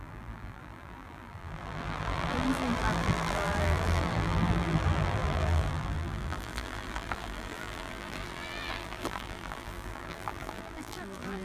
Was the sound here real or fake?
fake